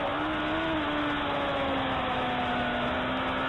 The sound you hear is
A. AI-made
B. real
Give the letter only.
B